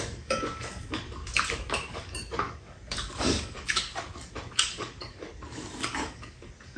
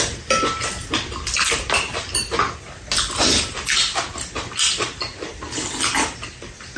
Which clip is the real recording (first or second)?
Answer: second